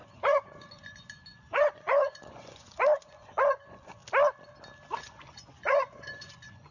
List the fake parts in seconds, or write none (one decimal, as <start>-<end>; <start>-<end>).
0.0-4.0; 5.0-6.7